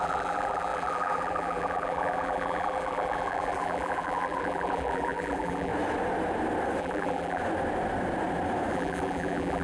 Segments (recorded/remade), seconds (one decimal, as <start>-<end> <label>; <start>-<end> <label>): 0.0-5.7 remade; 5.7-6.8 recorded; 6.8-7.4 remade; 7.4-8.7 recorded; 8.7-9.6 remade